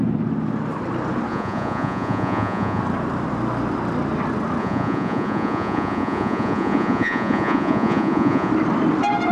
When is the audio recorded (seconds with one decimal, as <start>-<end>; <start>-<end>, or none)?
0.0-1.3; 2.8-4.6; 8.5-9.3